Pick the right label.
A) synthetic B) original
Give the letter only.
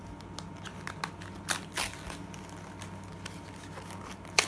B